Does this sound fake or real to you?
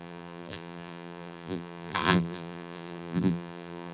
fake